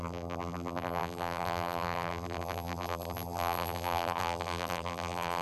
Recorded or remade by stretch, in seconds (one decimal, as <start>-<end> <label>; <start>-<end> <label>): 0.0-5.4 remade